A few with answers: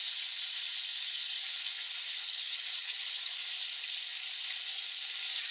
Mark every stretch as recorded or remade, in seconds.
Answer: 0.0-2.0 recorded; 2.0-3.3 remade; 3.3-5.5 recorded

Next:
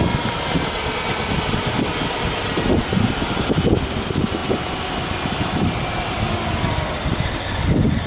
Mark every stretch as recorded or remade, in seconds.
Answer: 0.0-8.1 recorded

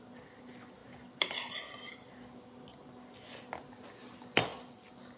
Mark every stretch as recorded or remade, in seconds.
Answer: 0.0-5.2 recorded

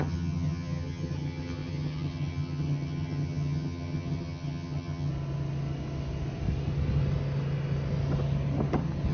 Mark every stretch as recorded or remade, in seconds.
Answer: 0.0-5.1 remade; 5.1-9.1 recorded

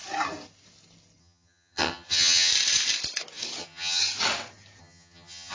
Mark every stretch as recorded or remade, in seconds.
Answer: 0.0-1.2 recorded; 1.2-2.5 remade; 2.5-3.6 recorded; 3.6-4.0 remade; 4.0-4.8 recorded; 4.8-5.5 remade

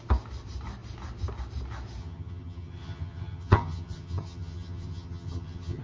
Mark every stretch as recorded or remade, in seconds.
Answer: 0.0-2.0 recorded; 2.0-5.8 remade

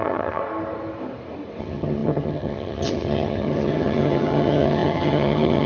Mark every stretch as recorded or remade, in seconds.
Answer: 0.0-0.4 remade; 0.4-1.6 recorded; 1.6-5.7 remade

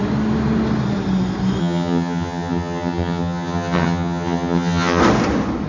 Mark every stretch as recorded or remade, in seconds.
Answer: 0.0-1.6 recorded; 1.6-5.0 remade; 5.0-5.7 recorded